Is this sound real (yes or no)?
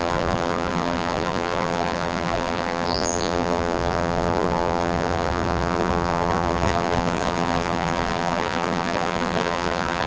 no